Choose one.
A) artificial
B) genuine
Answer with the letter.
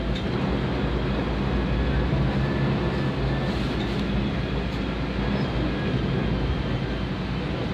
B